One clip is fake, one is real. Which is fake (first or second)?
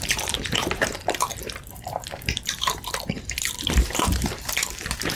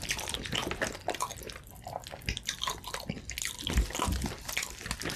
first